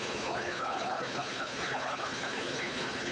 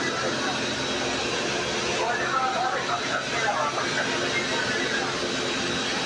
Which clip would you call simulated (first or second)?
first